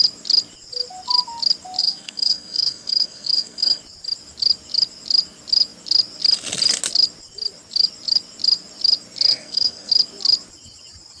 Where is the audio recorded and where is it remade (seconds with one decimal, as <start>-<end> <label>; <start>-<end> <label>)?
0.0-1.8 recorded; 1.8-3.8 remade; 3.8-9.3 recorded; 9.3-9.9 remade; 9.9-11.2 recorded